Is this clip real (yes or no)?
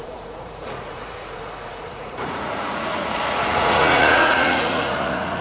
no